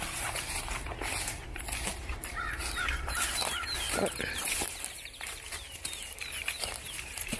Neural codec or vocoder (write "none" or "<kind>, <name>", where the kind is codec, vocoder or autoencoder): vocoder, BigVGAN v2